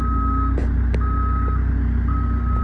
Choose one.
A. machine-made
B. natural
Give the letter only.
B